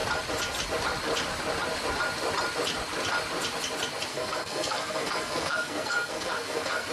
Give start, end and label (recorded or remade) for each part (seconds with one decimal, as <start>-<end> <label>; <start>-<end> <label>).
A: 0.0-4.1 recorded; 4.1-6.9 remade